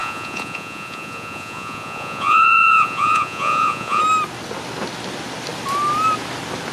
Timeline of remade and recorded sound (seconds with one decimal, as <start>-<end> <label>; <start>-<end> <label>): 0.0-4.0 remade; 4.0-6.7 recorded